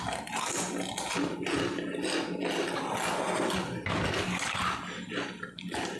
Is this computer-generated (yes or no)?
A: no